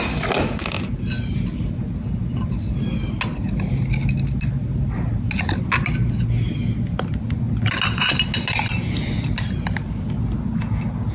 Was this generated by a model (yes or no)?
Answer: no